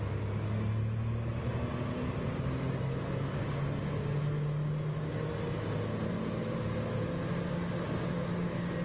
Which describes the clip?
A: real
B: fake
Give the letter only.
A